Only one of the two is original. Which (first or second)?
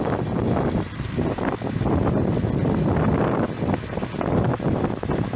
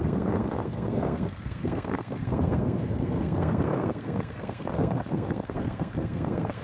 first